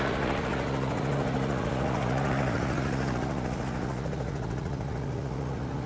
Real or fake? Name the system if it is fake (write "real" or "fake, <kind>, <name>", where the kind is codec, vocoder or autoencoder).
fake, vocoder, Vocos